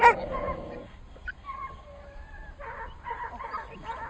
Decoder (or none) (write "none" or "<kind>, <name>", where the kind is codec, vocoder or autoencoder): none